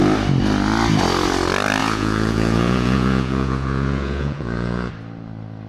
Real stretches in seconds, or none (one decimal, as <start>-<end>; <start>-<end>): 0.0-1.8; 4.9-5.7